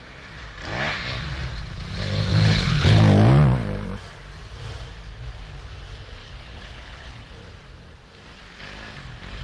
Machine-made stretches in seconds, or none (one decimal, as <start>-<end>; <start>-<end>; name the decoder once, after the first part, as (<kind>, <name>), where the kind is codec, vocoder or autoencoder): 2.3-3.0 (codec, HILCodec); 6.2-7.3